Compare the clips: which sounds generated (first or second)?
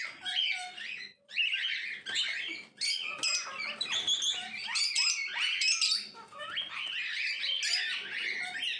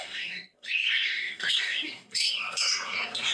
second